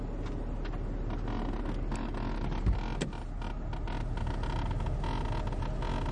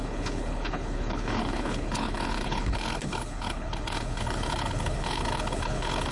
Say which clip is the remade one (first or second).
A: second